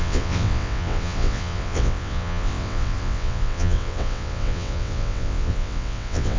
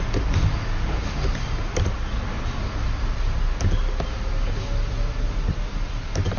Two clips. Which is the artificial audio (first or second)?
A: first